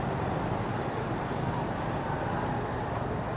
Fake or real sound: real